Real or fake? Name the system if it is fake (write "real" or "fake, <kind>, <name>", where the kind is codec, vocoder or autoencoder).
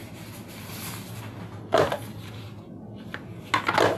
real